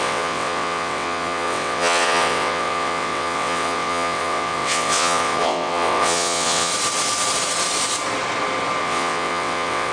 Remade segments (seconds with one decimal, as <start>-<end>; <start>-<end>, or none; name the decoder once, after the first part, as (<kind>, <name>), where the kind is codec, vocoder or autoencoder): 0.0-6.7 (vocoder, WaveNeXt); 8.8-9.9